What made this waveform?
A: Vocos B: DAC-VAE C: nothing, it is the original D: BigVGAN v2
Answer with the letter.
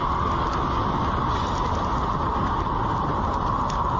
C